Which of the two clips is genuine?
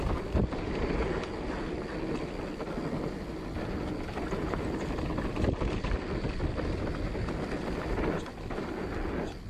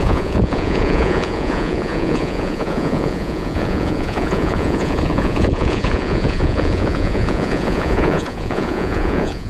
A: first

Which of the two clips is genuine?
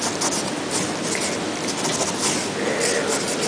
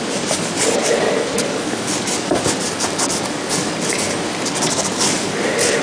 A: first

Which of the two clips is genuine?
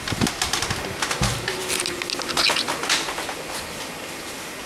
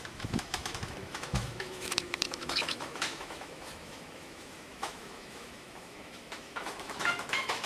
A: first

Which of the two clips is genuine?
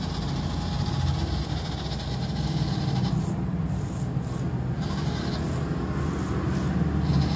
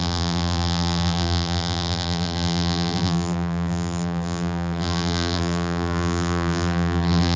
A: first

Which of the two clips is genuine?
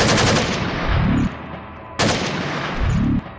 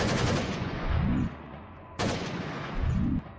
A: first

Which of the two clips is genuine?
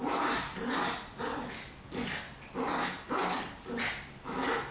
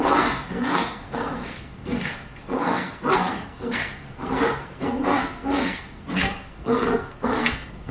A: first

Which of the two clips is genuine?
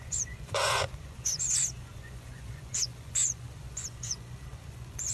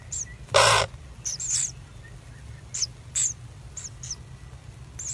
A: second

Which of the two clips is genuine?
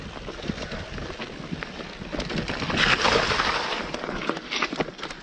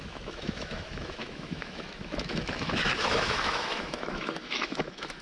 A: first